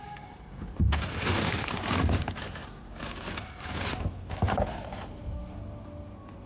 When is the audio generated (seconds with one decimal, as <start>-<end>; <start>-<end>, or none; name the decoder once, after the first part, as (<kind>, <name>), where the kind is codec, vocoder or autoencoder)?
1.1-1.7 (autoencoder, DAC-VAE)